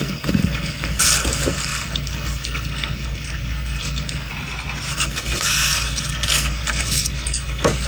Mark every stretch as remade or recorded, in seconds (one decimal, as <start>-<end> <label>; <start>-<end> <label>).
0.0-4.3 remade; 4.3-4.9 recorded; 4.9-7.9 remade